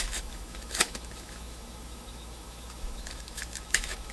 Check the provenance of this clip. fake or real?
fake